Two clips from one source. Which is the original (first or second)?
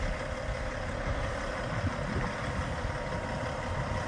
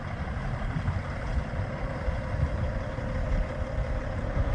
first